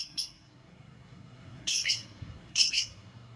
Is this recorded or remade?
remade